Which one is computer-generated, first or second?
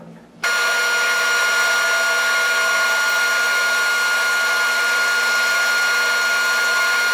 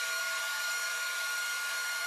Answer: second